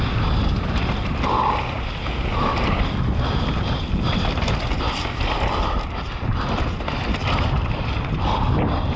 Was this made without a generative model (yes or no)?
yes